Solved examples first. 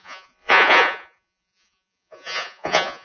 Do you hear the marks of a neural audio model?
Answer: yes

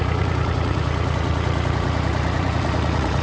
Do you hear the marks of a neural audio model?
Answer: yes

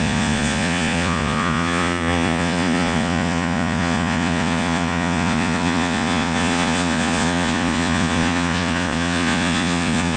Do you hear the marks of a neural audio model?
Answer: yes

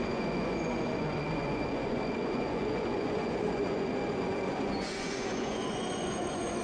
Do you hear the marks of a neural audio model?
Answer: yes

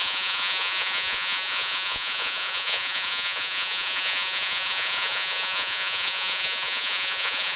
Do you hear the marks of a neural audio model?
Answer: yes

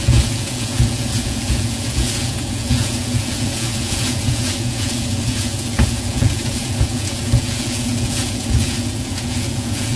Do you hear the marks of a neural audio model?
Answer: yes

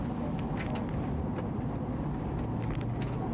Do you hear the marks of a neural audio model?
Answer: no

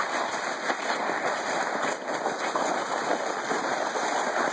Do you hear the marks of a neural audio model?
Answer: no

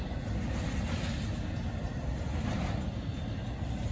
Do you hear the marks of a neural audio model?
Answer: no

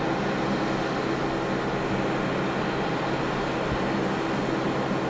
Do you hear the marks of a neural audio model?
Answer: no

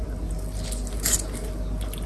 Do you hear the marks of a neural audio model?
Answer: no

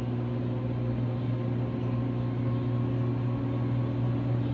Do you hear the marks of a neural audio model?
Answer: no